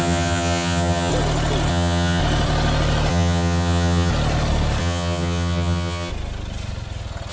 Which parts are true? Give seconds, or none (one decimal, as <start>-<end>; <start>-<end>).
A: 1.1-1.7; 2.2-3.1; 4.1-4.8; 6.1-7.3

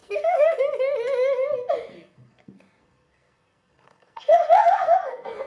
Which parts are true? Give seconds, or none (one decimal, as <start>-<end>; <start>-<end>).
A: 0.6-1.9

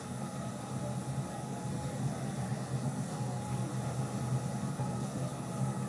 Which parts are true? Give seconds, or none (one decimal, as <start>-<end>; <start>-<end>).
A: 0.5-1.3; 3.7-4.7

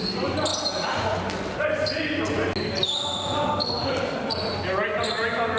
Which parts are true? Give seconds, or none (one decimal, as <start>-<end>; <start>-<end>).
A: 0.0-5.6

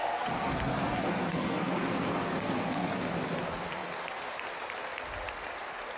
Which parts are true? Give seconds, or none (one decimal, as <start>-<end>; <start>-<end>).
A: 3.0-6.0

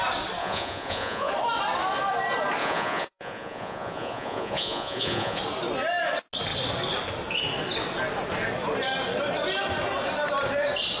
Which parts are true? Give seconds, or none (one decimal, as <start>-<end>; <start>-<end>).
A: 0.0-0.4; 1.3-2.6; 5.4-11.0

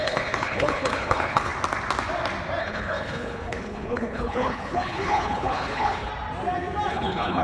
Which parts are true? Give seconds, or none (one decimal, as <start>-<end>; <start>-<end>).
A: 1.5-2.6; 6.1-6.9

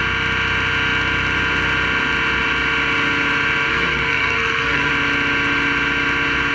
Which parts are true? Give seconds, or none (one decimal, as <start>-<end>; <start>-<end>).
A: 0.0-3.7; 4.9-6.5